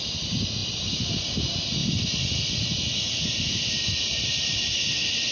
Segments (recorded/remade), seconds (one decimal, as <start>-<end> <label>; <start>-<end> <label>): 0.0-5.3 recorded